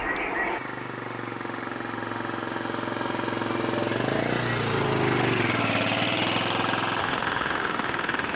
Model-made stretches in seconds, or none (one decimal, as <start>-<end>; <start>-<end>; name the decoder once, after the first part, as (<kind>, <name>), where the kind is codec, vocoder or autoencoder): 7.0-8.4 (autoencoder, DAC-VAE)